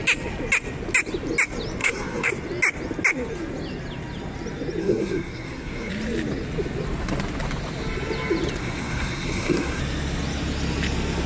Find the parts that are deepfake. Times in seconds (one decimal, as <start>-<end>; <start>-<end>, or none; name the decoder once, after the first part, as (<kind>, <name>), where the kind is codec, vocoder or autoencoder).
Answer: 1.8-2.3 (codec, SNAC); 4.8-5.9; 8.6-9.8